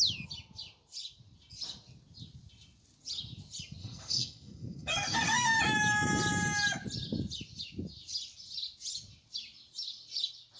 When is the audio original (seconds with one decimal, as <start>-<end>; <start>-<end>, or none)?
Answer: 0.0-3.8; 5.6-10.6